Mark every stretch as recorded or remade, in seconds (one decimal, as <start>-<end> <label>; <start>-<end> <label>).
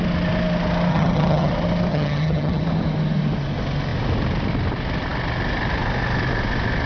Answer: 0.0-0.9 recorded; 0.9-1.5 remade; 1.5-1.9 recorded; 1.9-2.6 remade; 2.6-6.9 recorded